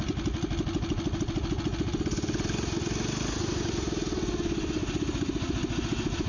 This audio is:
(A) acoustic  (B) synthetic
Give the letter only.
A